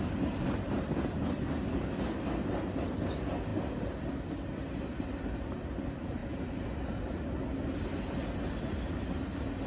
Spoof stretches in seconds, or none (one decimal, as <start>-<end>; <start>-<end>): none